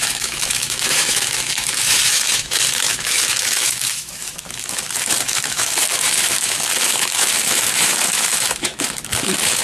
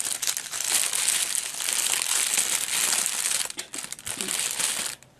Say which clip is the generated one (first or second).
first